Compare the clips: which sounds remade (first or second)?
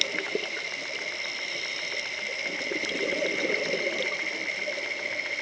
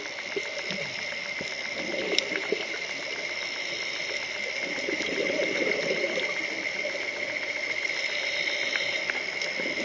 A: first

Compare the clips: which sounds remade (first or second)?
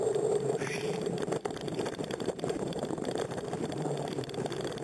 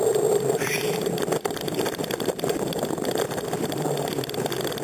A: first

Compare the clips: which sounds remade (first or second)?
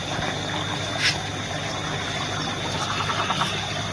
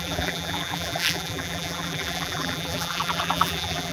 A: second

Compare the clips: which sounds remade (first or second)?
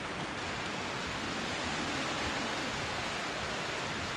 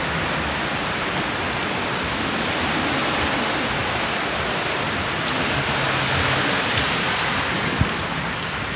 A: second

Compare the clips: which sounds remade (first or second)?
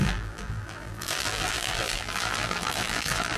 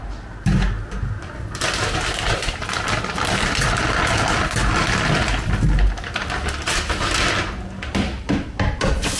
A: first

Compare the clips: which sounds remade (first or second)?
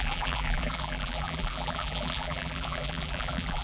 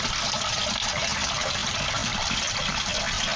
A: first